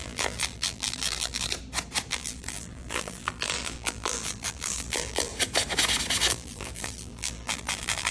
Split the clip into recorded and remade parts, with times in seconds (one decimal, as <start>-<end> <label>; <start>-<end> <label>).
0.0-1.5 remade; 1.5-2.1 recorded; 2.1-5.3 remade; 5.3-6.3 recorded; 6.3-8.1 remade